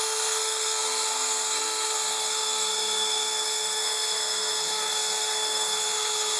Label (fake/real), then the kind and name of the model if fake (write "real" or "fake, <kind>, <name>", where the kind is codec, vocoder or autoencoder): fake, codec, SNAC